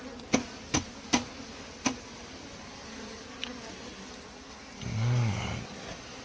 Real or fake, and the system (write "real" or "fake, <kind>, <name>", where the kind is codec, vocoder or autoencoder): real